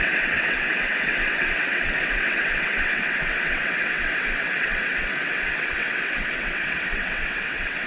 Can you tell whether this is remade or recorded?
remade